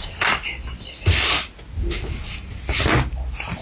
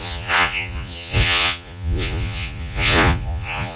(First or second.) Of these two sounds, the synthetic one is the second